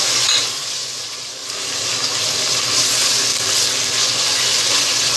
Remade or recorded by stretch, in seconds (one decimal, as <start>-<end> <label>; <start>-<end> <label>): 0.0-1.4 remade; 1.4-2.9 recorded; 2.9-3.3 remade; 3.3-3.9 recorded; 3.9-5.2 remade